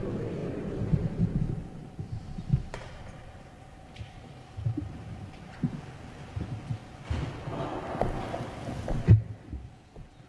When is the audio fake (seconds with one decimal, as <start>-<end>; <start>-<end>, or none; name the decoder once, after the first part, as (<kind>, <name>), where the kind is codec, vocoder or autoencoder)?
0.4-1.4 (vocoder, BigVGAN v2); 1.8-5.7